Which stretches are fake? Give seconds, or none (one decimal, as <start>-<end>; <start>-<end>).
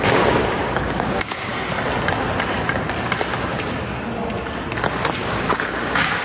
0.0-1.5; 5.2-6.2